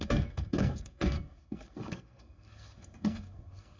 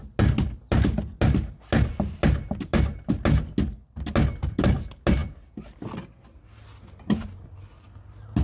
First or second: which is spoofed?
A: first